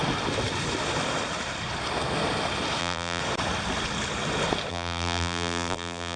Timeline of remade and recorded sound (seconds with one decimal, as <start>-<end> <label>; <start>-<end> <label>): 0.0-2.8 recorded; 2.8-3.2 remade; 3.2-4.7 recorded; 4.7-6.2 remade